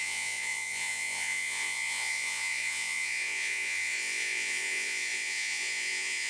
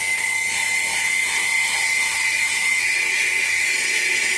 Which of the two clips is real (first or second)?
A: second